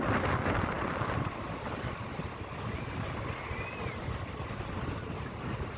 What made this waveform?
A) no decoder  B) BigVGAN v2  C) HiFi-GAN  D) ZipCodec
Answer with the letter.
A